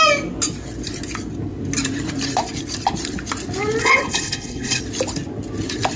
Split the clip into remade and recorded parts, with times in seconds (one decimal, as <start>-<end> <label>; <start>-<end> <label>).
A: 0.0-3.8 recorded; 3.8-4.8 remade; 4.8-6.0 recorded